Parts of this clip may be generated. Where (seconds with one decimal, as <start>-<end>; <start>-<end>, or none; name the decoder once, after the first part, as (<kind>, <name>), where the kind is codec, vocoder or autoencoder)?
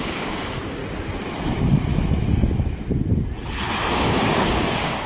0.0-0.8 (codec, DAC); 3.9-5.1